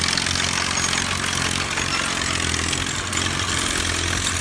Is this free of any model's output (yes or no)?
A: yes